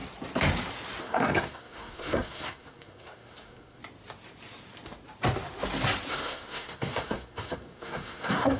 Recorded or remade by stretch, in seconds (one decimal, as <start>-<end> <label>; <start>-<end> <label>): 0.0-1.0 recorded; 1.0-3.8 remade; 3.8-6.1 recorded; 6.1-8.6 remade